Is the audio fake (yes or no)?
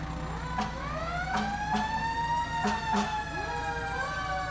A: no